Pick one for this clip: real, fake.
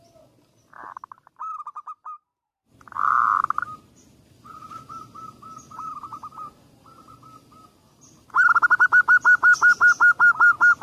real